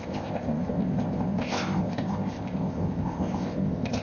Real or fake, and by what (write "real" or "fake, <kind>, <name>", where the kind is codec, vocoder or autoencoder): fake, codec, ZipCodec